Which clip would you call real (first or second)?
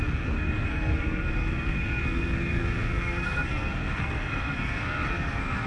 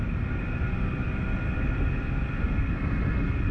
second